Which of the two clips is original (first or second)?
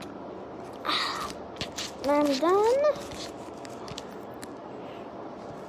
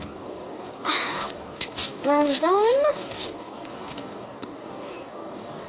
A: first